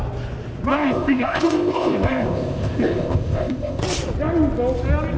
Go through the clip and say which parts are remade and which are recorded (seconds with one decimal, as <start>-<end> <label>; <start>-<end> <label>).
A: 0.0-0.7 recorded; 0.7-3.8 remade; 3.8-5.2 recorded

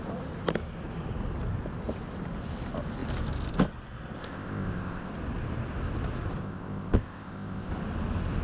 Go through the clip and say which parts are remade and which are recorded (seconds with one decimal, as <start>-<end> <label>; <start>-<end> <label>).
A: 0.0-4.2 recorded; 4.2-5.1 remade; 5.1-6.4 recorded; 6.4-7.7 remade; 7.7-8.4 recorded

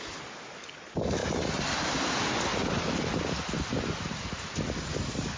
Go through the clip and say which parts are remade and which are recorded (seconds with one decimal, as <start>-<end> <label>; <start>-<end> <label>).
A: 0.0-5.4 recorded